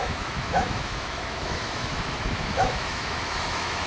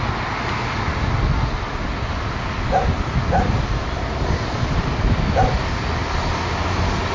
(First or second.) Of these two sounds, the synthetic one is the first